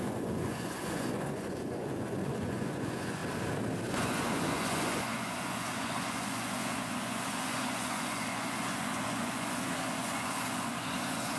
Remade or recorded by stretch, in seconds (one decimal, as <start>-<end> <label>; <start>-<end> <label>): 0.0-3.2 remade; 3.2-3.9 recorded; 3.9-11.4 remade